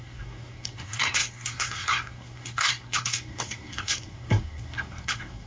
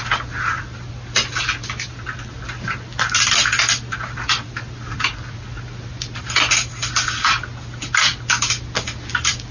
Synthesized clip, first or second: first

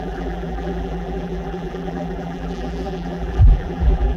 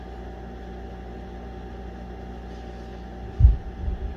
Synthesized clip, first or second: first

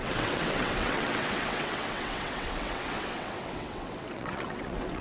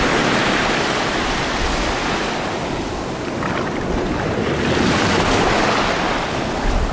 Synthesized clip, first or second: first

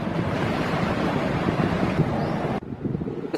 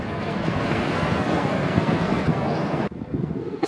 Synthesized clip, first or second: second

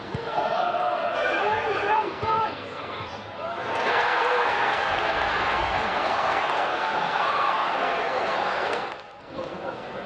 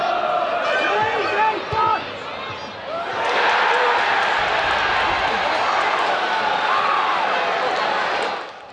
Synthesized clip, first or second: first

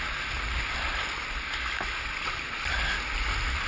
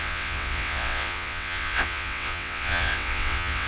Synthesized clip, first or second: second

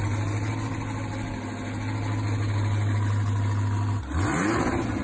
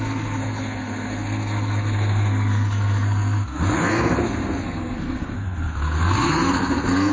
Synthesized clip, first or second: second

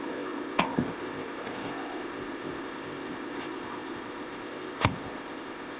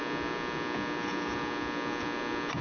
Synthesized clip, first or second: first